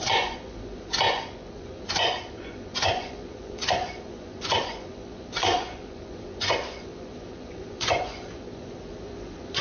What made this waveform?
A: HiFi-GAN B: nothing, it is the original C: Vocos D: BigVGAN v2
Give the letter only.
C